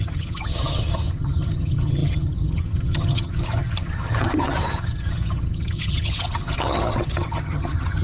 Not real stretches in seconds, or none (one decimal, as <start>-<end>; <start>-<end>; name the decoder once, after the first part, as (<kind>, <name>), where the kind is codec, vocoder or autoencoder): 0.0-8.0 (vocoder, HiFi-GAN)